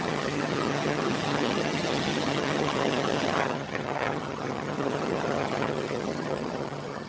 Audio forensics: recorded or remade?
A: remade